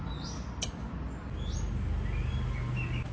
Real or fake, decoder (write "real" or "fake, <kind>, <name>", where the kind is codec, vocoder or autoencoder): real